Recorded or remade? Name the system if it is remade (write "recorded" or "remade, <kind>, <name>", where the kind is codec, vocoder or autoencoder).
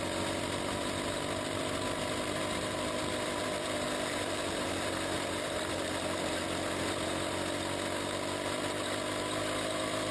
recorded